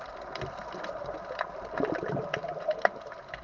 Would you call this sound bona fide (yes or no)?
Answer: yes